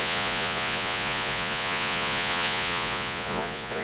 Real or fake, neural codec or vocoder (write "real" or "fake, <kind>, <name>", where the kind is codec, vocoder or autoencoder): fake, vocoder, Vocos